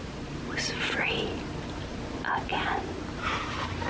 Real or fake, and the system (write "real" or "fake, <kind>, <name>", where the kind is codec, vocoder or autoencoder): real